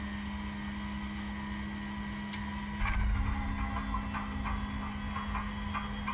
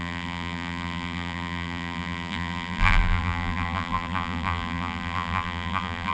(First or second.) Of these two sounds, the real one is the first